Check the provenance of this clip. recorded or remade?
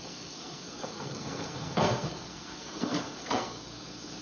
remade